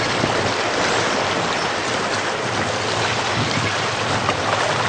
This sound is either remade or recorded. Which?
recorded